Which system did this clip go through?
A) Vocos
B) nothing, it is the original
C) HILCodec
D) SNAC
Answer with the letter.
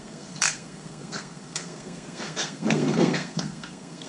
D